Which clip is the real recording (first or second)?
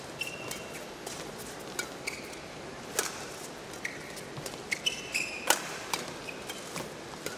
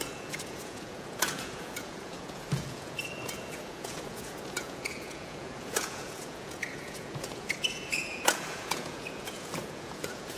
first